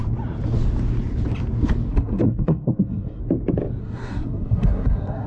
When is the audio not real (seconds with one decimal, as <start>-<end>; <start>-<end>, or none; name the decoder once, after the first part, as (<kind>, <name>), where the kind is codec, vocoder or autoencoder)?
1.9-3.2 (codec, SNAC); 3.8-5.3